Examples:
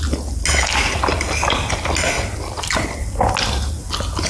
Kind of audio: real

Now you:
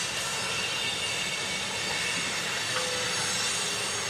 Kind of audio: real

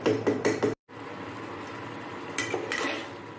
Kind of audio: fake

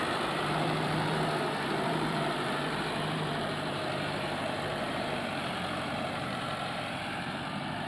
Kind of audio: fake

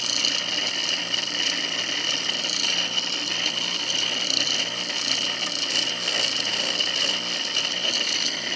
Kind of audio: real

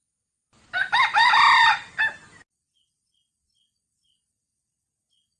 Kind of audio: real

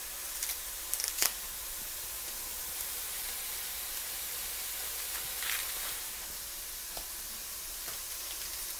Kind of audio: fake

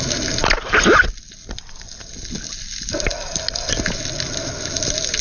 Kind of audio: real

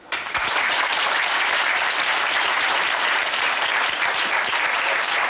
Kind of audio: fake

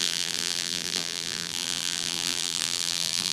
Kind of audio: fake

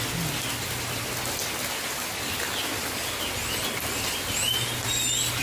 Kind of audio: real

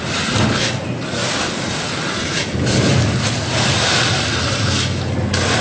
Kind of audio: real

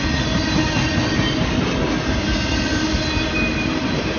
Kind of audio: real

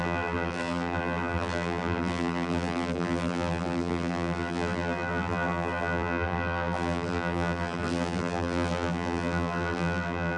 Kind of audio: fake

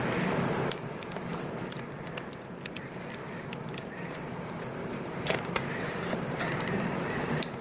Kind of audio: fake